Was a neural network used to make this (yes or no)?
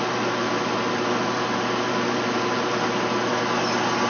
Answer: no